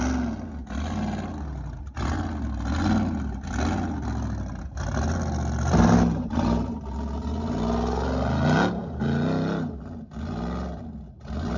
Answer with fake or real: real